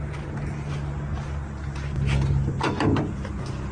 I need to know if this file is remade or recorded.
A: recorded